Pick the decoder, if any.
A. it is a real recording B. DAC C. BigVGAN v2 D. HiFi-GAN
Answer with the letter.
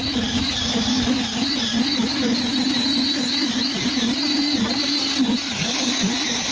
A